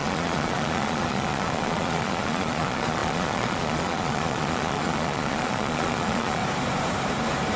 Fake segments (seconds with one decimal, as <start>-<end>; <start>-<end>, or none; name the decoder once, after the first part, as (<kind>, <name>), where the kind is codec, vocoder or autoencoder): 0.0-6.4 (vocoder, Vocos)